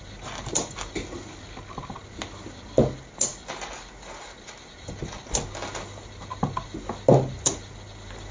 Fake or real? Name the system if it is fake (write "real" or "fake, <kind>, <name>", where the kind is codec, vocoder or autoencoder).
real